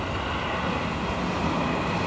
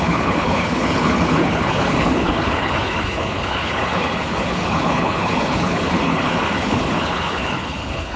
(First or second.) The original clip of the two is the first